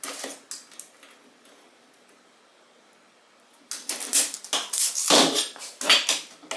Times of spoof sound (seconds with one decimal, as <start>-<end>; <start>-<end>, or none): none